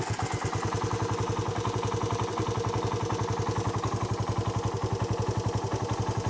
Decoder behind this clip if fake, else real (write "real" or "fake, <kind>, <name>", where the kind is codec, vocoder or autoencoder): real